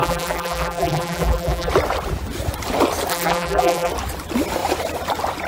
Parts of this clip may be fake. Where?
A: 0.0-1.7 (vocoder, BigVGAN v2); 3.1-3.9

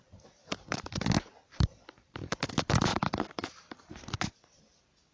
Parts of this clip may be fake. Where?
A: 0.4-1.0 (vocoder, BigVGAN v2); 2.9-3.9

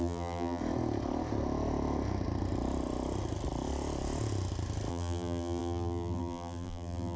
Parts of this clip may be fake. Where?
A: 0.0-0.6 (vocoder, BigVGAN v2); 4.9-7.2

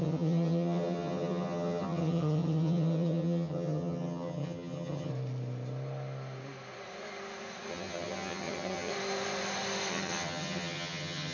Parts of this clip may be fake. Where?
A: 0.0-5.1 (vocoder, HiFi-GAN); 7.7-8.9; 9.9-11.3

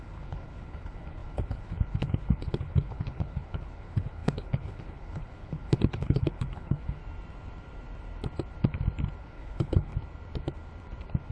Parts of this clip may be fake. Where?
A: 0.0-7.0 (codec, HILCodec); 9.2-9.9